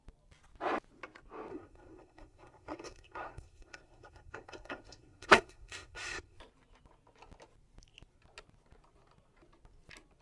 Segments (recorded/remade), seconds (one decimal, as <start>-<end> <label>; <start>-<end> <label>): 0.0-1.5 recorded; 1.5-6.4 remade; 6.4-10.2 recorded